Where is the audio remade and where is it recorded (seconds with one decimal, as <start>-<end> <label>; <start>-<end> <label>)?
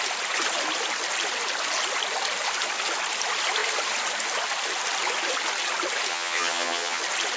0.0-6.1 recorded; 6.1-7.0 remade; 7.0-7.4 recorded